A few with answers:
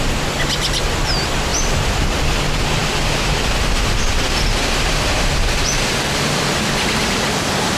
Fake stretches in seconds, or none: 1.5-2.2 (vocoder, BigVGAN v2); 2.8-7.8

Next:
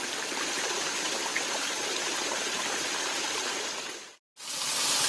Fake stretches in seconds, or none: none